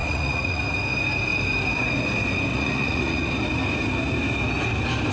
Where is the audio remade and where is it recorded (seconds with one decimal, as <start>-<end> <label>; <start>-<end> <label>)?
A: 0.0-0.6 remade; 0.6-2.5 recorded; 2.5-3.3 remade; 3.3-5.1 recorded